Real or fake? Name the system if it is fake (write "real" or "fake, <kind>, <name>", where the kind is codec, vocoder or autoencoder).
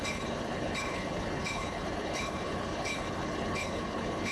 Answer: fake, codec, HILCodec